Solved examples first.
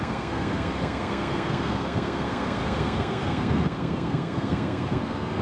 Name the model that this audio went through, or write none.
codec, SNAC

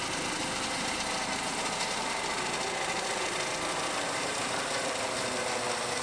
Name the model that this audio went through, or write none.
none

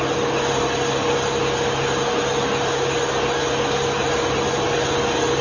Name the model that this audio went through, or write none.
none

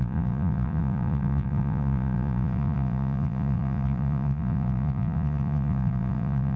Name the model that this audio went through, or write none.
vocoder, Vocos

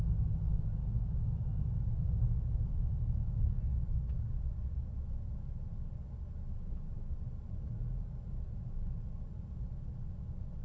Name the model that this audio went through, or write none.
none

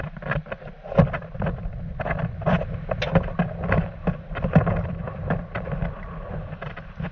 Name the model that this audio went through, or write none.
none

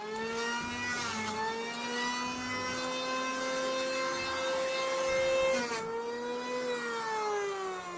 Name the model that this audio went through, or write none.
none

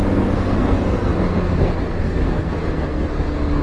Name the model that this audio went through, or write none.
codec, SNAC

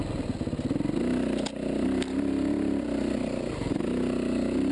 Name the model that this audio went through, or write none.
none